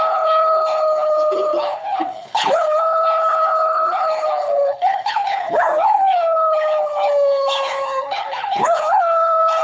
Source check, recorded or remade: remade